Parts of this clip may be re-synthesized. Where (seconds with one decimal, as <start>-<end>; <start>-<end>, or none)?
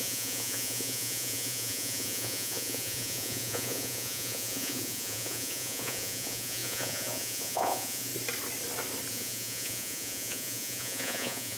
0.0-8.1; 9.1-11.6